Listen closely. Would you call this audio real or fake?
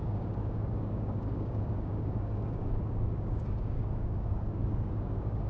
fake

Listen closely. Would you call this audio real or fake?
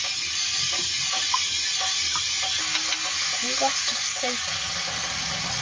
real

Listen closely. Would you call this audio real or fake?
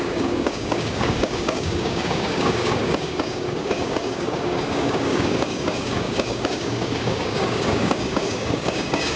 fake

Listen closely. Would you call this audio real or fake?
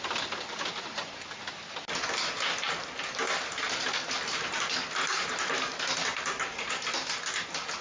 real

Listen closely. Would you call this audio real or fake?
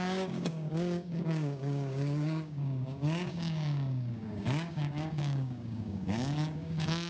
fake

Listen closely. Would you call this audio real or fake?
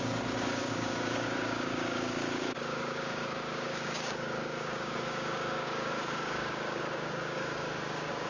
fake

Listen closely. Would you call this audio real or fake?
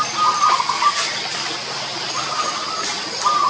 real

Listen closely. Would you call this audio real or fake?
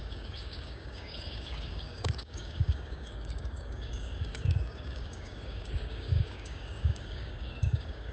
fake